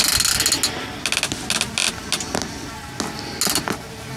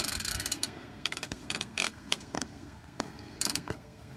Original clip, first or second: first